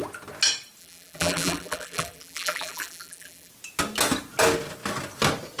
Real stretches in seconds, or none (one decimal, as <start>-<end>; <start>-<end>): 0.0-0.8; 3.5-5.6